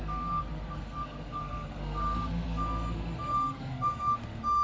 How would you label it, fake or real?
fake